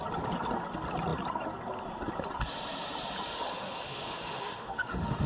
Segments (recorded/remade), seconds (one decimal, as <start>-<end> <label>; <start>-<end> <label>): 0.0-3.3 recorded; 3.3-5.3 remade

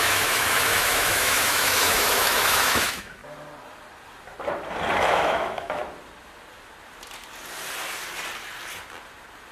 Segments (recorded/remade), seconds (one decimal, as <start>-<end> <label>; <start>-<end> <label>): 0.0-3.2 remade; 3.2-5.0 recorded; 5.0-5.8 remade; 5.8-9.5 recorded